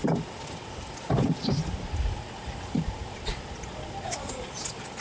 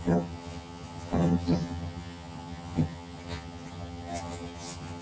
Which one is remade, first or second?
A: second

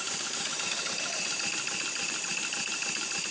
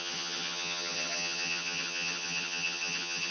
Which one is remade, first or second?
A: second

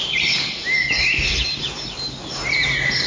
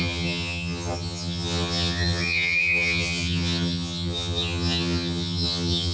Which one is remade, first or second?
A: second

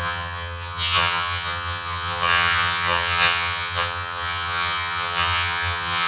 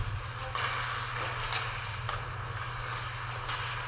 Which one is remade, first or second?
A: first